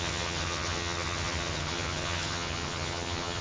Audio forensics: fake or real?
fake